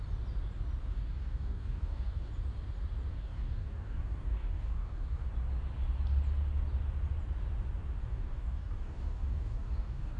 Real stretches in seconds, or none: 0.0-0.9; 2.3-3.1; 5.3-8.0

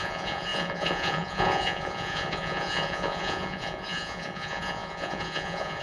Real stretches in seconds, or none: none

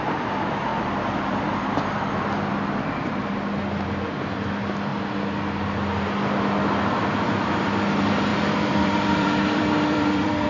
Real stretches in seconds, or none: 0.0-8.3

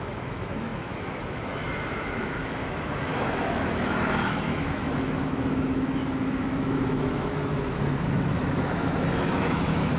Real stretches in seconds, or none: none

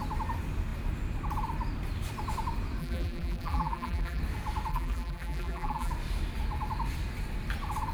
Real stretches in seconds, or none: 0.0-2.8; 4.2-4.7; 5.9-7.9

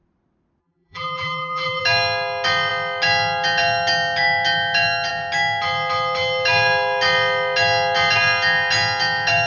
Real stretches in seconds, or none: 0.0-0.6; 1.8-9.5

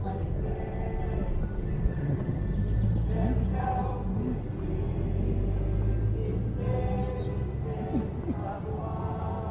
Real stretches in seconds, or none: 0.0-1.9; 2.4-9.5

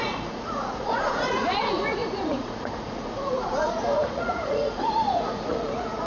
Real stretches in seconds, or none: none